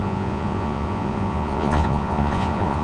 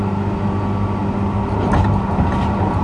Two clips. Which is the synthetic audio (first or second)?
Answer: first